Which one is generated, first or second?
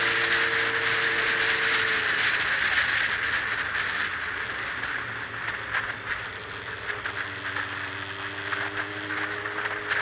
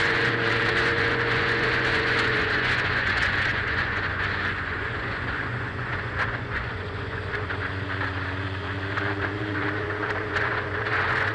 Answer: second